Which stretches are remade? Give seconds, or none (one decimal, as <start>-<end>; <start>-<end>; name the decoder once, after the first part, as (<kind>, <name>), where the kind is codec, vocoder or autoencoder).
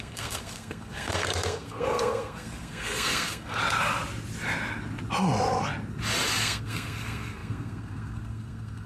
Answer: 0.0-3.6 (codec, SNAC); 6.4-8.9